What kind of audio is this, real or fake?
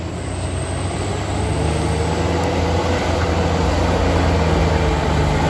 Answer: real